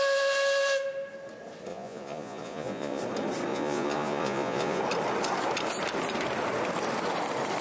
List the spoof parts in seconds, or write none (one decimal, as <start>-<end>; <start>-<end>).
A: 1.7-3.0; 3.5-4.8